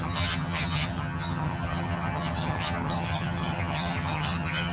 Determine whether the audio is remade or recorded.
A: remade